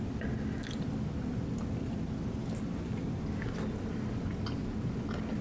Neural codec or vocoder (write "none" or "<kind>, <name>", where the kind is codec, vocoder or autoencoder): none